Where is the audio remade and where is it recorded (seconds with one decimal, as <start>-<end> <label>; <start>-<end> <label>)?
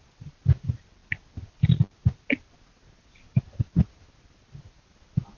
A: 0.0-5.4 recorded